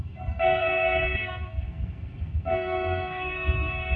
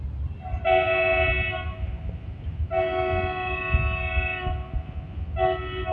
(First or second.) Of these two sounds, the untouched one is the second